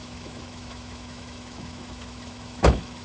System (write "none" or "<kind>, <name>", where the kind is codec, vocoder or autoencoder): autoencoder, DAC-VAE